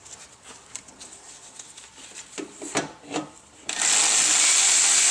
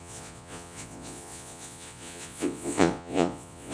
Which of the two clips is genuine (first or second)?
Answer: first